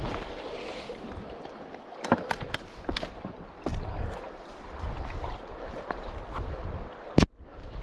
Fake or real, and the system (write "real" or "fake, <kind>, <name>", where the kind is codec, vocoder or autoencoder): real